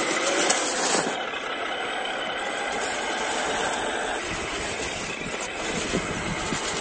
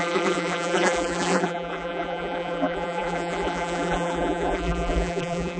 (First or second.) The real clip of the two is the first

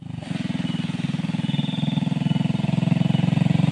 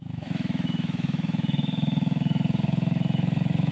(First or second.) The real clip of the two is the first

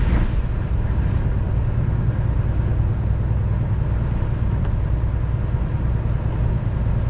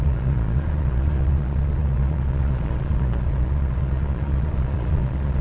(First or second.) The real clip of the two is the first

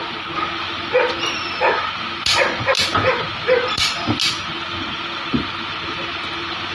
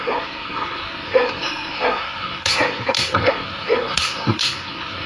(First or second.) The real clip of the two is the first